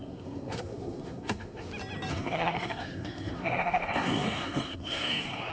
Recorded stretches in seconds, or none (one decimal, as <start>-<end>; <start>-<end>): 1.7-2.1